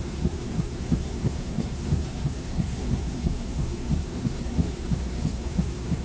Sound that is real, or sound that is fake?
fake